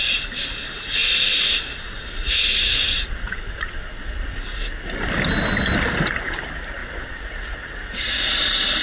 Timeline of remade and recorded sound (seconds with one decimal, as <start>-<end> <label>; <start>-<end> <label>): 0.0-1.0 recorded; 1.0-4.3 remade; 4.3-6.8 recorded; 6.8-8.1 remade; 8.1-8.8 recorded